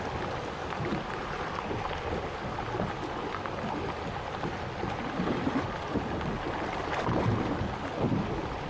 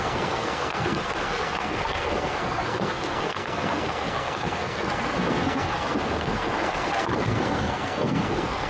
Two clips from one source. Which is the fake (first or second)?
second